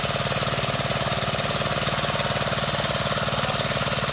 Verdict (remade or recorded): recorded